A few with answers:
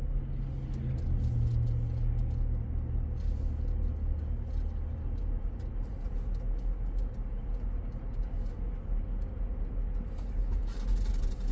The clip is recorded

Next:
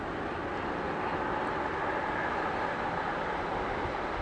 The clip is recorded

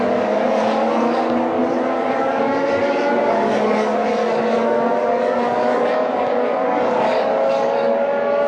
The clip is remade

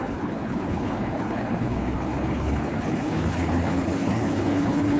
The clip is remade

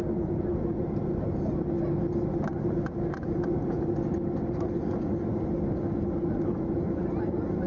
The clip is recorded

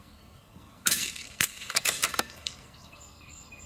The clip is remade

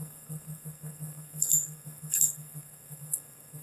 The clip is remade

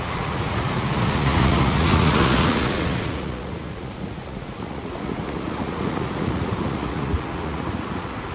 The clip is remade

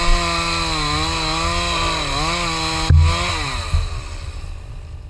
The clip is recorded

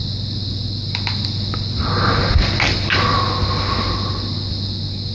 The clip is recorded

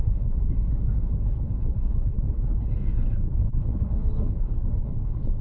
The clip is remade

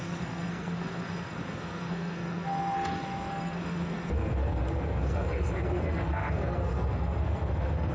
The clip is remade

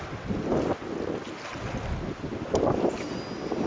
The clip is recorded